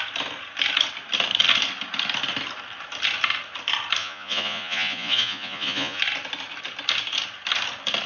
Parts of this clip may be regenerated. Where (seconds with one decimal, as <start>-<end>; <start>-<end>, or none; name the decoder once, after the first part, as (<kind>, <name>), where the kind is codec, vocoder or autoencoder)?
4.0-6.0 (vocoder, Vocos)